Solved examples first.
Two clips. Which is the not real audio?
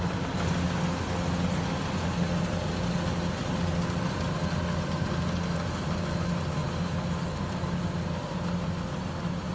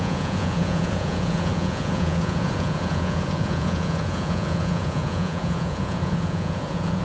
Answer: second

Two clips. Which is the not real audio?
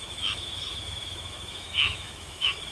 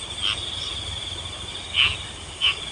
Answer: first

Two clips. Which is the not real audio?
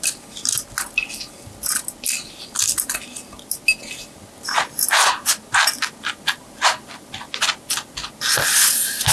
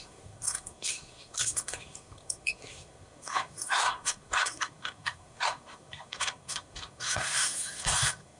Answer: second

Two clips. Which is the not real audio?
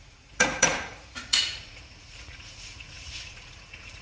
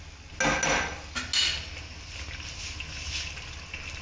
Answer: first